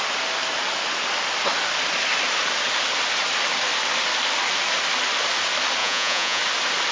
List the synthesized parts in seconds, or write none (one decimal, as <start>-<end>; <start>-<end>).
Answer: 5.8-6.4